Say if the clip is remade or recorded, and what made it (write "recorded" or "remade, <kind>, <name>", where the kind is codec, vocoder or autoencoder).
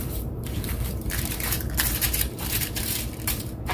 remade, vocoder, BigVGAN v2